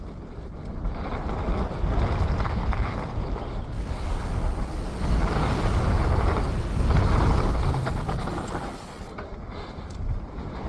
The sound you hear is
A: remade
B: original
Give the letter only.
B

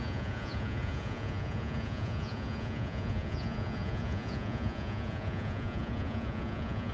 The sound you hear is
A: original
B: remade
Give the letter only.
B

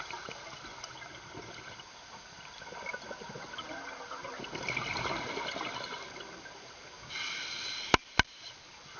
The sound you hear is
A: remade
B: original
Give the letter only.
B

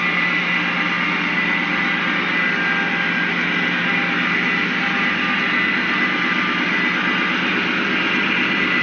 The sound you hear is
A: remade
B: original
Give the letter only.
B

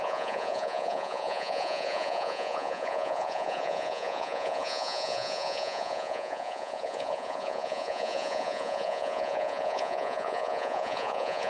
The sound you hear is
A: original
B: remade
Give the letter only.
B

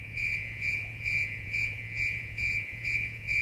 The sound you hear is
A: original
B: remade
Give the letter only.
B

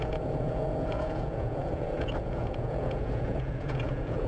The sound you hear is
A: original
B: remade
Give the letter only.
B